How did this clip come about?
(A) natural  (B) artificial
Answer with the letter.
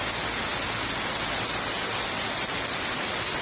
A